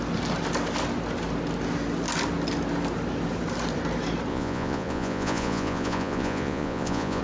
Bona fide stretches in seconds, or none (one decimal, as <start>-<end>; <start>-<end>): 0.0-4.3